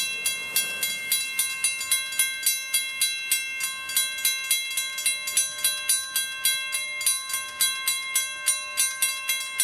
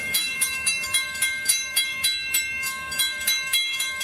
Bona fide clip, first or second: first